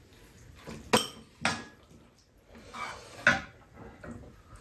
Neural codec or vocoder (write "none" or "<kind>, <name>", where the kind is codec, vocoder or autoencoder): none